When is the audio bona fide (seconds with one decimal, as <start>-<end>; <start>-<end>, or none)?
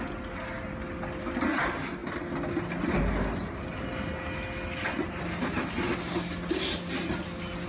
0.0-7.7